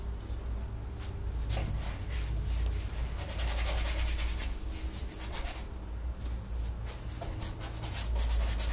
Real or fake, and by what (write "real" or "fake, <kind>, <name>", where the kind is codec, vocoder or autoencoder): real